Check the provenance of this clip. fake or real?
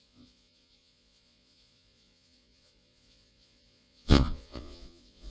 fake